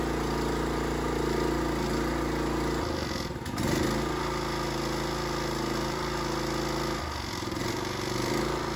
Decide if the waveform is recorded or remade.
remade